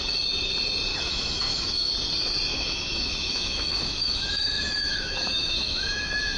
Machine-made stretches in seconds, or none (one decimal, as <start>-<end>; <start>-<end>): 0.9-1.9; 2.5-6.4